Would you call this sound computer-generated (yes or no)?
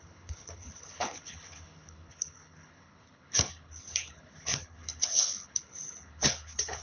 yes